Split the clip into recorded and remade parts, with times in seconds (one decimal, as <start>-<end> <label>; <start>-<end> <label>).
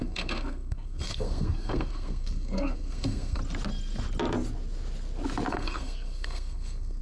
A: 0.0-3.4 remade; 3.4-5.5 recorded; 5.5-7.0 remade